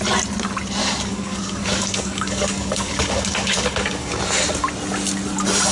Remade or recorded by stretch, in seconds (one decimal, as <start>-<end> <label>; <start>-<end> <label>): 0.0-0.8 recorded; 0.8-4.2 remade; 4.2-5.7 recorded